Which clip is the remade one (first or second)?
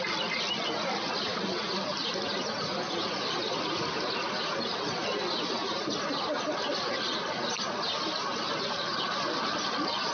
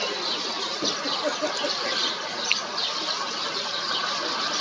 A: second